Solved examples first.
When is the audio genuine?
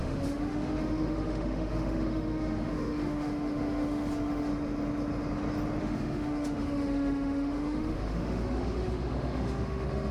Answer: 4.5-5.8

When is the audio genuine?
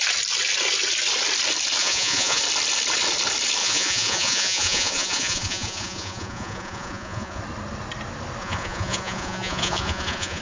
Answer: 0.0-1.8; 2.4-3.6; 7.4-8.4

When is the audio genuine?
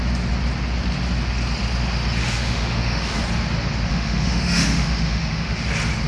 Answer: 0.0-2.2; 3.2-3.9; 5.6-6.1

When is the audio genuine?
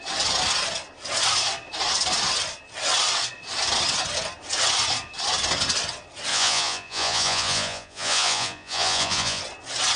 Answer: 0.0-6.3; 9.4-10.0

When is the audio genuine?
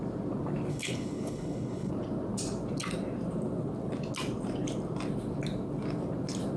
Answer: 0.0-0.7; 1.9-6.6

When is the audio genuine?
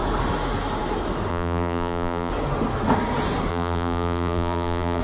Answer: 0.0-1.3; 2.3-3.5